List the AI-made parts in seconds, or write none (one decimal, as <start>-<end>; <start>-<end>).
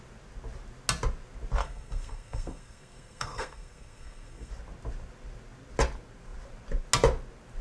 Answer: 1.6-4.5